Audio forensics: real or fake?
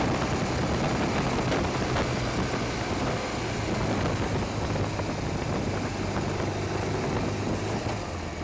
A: real